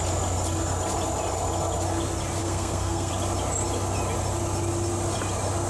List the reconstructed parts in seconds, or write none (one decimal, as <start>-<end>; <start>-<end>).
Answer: 2.4-3.1